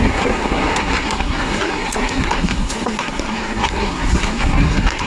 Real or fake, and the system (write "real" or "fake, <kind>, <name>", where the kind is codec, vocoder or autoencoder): fake, codec, SNAC